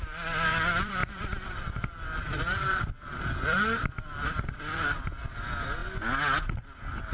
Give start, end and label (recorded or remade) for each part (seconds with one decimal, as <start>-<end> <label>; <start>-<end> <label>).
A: 0.0-5.8 remade; 5.8-7.1 recorded